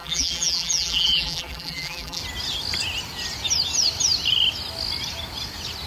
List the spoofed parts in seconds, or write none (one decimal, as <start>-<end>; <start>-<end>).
0.0-2.2